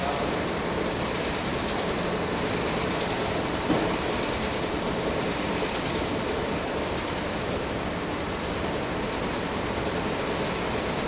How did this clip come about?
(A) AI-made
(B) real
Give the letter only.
B